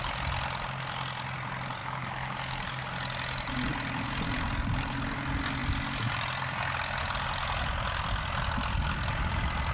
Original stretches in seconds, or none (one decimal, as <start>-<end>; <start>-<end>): 0.0-1.8; 2.8-9.7